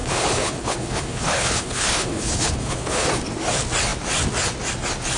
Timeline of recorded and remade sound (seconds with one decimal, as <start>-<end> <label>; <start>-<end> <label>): 0.0-3.1 remade; 3.1-5.2 recorded